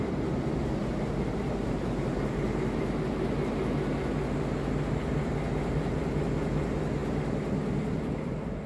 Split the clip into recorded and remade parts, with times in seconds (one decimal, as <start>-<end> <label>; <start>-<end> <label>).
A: 0.0-0.6 recorded; 0.6-3.6 remade; 3.6-8.7 recorded